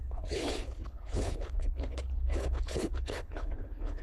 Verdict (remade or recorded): remade